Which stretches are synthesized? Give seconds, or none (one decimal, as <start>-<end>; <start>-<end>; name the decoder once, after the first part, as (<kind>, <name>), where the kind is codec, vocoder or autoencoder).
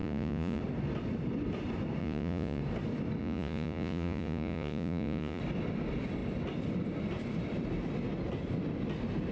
0.0-0.6 (vocoder, Vocos); 2.0-2.6; 3.2-5.4